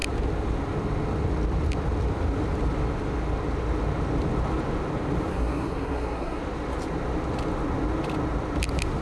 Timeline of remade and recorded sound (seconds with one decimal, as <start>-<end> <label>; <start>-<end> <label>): 0.0-5.3 recorded; 5.3-6.4 remade; 6.4-9.0 recorded